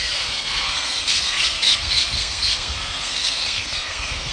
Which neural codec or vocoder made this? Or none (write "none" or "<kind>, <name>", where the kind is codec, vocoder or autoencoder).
codec, SNAC